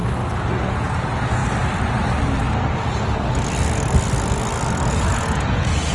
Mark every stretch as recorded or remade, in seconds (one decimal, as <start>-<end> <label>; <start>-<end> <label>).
0.0-0.7 recorded; 0.7-1.4 remade; 1.4-4.9 recorded; 4.9-5.9 remade